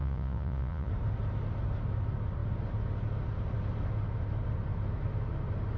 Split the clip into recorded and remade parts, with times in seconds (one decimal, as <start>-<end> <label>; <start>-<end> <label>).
0.0-0.9 remade; 0.9-5.8 recorded